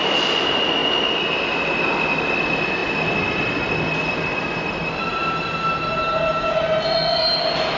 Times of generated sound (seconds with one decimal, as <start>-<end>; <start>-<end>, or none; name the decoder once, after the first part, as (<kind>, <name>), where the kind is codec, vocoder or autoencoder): none